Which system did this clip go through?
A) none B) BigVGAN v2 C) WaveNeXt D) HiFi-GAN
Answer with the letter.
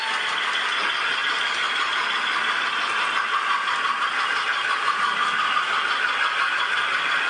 A